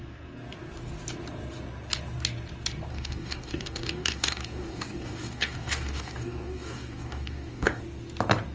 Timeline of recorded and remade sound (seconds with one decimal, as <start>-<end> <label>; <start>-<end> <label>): 0.0-2.9 recorded; 2.9-7.8 remade; 7.8-8.5 recorded